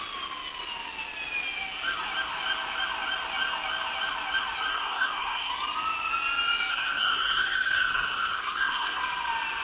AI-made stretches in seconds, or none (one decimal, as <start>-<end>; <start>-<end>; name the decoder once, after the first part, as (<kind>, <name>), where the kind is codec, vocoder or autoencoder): 4.7-5.5 (codec, SNAC); 6.7-9.0